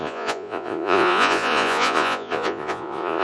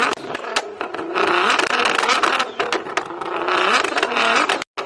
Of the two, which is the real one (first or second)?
second